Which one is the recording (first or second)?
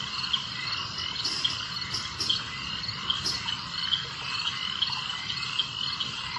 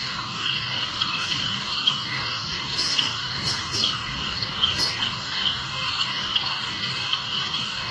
first